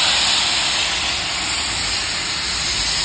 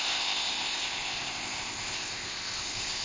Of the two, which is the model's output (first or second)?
second